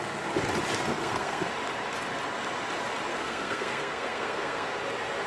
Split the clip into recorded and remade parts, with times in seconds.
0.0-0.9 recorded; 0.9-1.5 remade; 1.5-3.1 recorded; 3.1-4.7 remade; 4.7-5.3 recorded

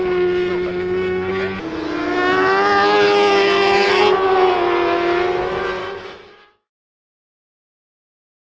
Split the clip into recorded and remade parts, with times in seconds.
0.0-0.5 recorded; 0.5-1.3 remade; 1.3-2.0 recorded; 2.0-4.0 remade; 4.0-5.8 recorded; 5.8-6.7 remade; 6.7-8.4 recorded

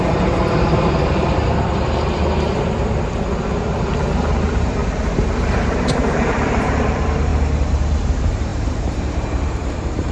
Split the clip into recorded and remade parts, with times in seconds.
0.0-1.4 remade; 1.4-4.3 recorded; 4.3-4.8 remade; 4.8-5.5 recorded; 5.5-7.3 remade; 7.3-8.0 recorded; 8.0-10.1 remade